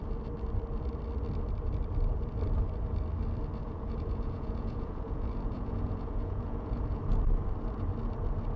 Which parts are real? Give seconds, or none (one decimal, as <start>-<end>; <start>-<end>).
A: 0.0-3.6; 7.0-8.6